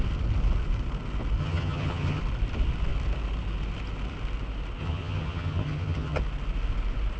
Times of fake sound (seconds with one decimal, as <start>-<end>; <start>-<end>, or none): 1.4-2.2; 4.8-6.2